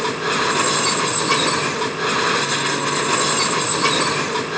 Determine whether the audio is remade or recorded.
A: recorded